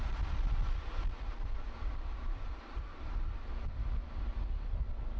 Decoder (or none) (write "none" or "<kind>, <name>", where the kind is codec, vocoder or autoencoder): none